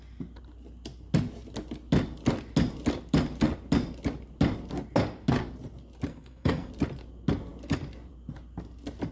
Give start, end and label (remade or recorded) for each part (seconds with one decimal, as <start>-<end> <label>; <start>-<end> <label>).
0.0-6.1 recorded; 6.1-6.7 remade; 6.7-9.1 recorded